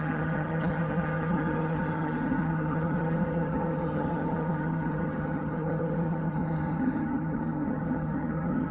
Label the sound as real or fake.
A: fake